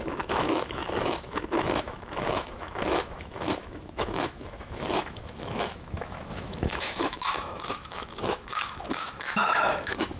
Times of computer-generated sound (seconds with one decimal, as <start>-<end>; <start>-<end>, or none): 0.0-10.2